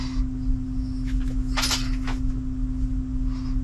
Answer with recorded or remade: recorded